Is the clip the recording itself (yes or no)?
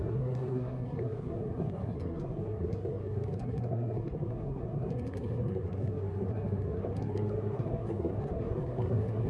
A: no